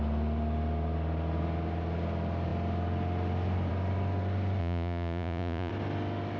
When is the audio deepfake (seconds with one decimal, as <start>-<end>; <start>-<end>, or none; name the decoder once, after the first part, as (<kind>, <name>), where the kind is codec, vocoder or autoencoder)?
4.6-5.7 (vocoder, Vocos)